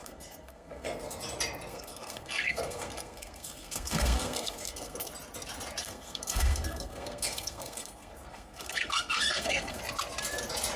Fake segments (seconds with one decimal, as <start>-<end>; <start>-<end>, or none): 0.0-1.2; 1.7-5.1; 5.8-9.8